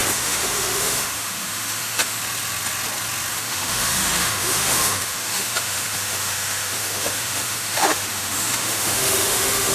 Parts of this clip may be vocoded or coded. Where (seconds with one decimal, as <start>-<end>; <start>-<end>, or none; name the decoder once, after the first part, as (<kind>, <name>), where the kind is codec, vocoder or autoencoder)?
0.0-2.2 (autoencoder, DAC-VAE); 3.3-9.7